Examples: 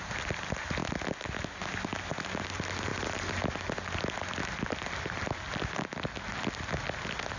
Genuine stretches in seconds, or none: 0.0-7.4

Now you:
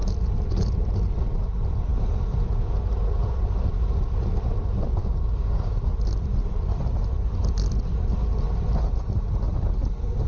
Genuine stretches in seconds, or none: 0.0-5.0; 5.9-10.3

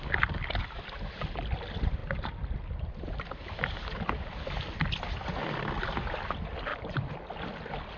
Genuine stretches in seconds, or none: 0.0-8.0

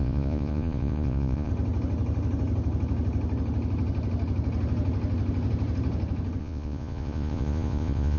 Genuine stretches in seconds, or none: 1.5-6.4

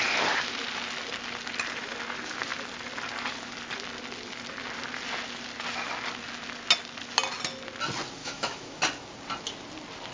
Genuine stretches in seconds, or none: 0.0-8.2; 8.8-10.1

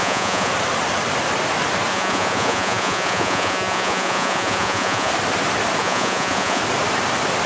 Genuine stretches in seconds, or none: 0.5-1.9; 5.1-5.8; 6.6-7.5

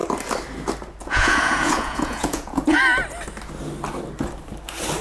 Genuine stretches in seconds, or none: 0.0-1.0; 2.8-5.0

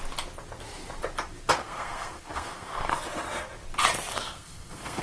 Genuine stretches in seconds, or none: 0.0-1.6; 2.9-4.1